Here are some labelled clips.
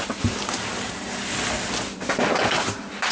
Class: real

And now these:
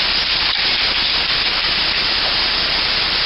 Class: real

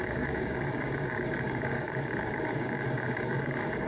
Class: fake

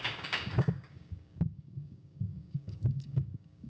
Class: fake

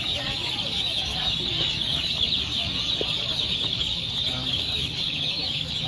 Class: fake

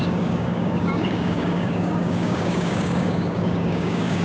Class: fake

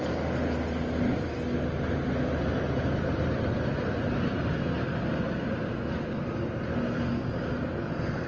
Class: real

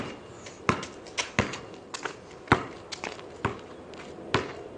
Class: real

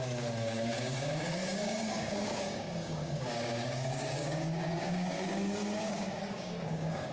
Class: fake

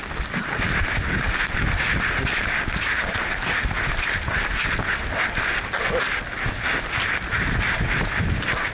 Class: real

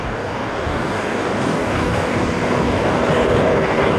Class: fake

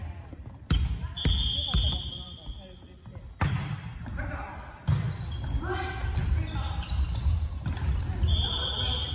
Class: real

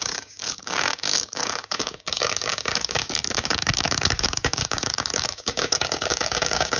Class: fake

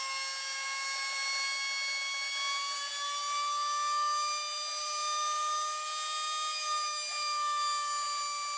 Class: real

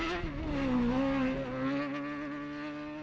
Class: real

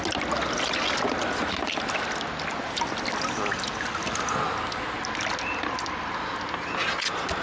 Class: real